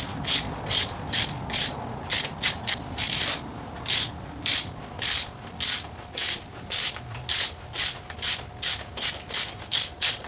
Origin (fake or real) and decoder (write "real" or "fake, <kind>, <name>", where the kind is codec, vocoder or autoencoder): real